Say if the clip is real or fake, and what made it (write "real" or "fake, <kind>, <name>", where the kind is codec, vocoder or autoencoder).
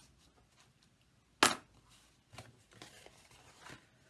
real